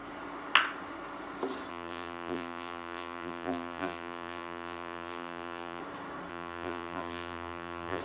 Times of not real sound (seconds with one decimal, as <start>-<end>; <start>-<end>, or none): 1.7-5.8; 6.3-8.0